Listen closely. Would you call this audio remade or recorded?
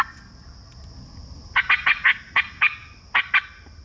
recorded